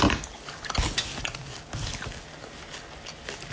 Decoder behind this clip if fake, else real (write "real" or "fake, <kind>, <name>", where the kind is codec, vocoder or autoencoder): real